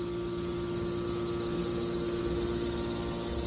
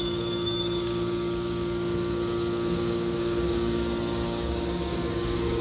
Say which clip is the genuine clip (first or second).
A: first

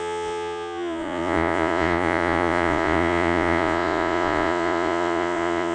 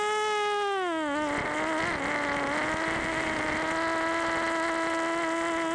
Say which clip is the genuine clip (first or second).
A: second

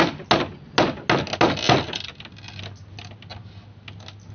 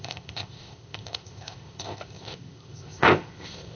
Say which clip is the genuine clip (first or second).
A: first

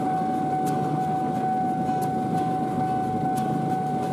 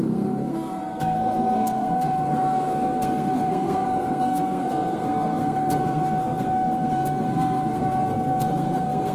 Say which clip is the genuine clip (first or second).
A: first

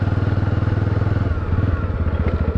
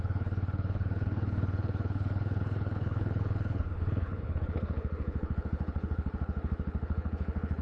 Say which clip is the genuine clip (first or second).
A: first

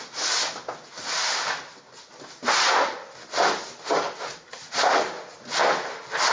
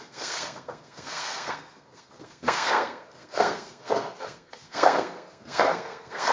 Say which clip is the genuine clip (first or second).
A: first